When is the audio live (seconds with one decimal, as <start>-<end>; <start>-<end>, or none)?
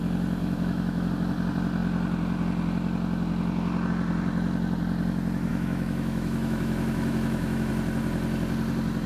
0.0-0.4; 1.1-5.5; 7.7-9.1